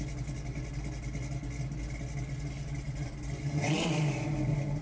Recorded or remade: recorded